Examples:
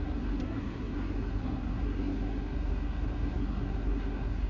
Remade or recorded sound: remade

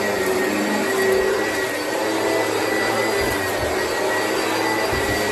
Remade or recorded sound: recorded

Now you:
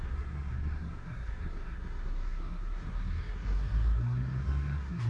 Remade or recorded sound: remade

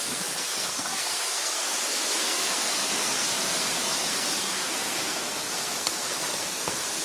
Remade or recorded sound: remade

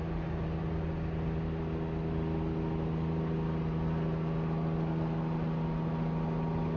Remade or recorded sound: recorded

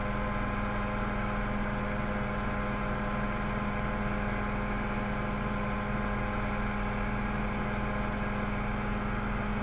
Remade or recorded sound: recorded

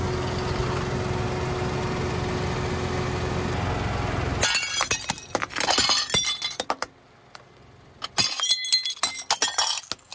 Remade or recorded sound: recorded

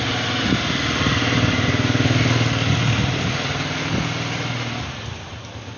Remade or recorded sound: recorded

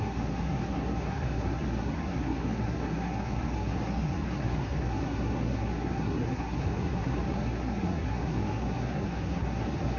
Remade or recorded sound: remade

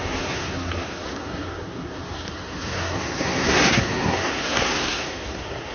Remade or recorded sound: remade